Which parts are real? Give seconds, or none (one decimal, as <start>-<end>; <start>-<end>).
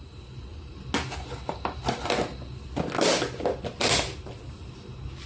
0.0-5.3